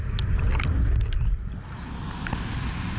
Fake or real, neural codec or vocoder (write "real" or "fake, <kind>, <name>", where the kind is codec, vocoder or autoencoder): real